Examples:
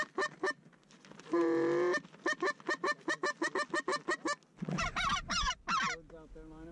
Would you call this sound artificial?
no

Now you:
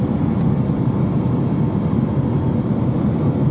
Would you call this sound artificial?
no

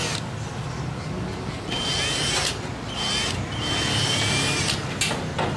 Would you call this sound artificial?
no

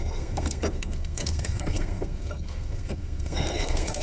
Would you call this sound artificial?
yes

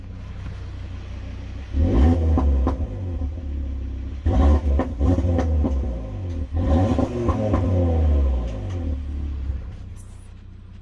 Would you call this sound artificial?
no